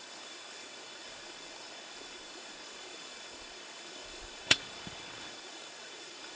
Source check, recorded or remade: remade